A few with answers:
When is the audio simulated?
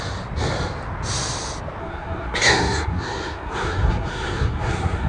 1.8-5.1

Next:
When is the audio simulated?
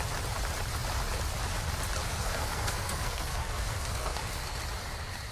2.1-4.6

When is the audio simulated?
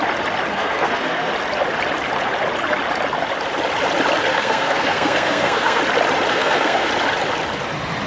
0.5-1.3; 4.3-5.8; 6.3-6.9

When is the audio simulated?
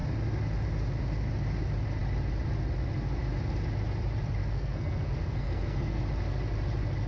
4.4-6.0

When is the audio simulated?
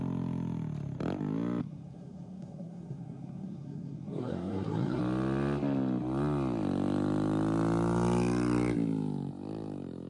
1.6-5.0